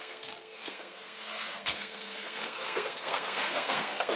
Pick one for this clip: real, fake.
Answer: fake